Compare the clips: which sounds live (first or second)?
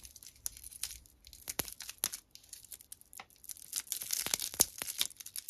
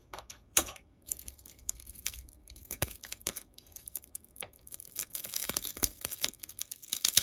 first